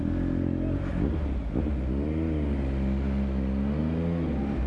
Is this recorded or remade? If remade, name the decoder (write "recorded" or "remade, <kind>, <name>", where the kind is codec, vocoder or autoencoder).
recorded